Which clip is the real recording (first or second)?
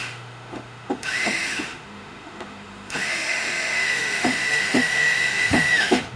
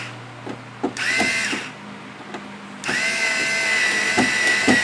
second